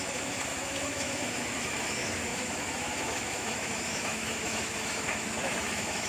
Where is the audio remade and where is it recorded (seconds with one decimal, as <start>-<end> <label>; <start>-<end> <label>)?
0.0-6.1 remade